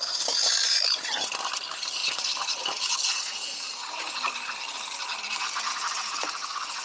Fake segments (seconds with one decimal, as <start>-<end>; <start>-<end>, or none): 2.0-4.1; 5.7-6.8